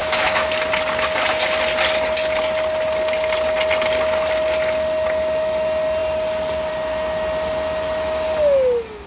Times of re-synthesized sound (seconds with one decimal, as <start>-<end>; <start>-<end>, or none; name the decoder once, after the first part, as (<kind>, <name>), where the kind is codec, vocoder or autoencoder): 0.0-0.7 (autoencoder, DAC-VAE)